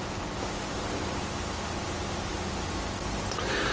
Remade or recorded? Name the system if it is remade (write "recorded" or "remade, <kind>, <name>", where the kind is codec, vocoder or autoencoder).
recorded